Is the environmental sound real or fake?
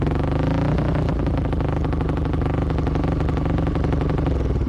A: real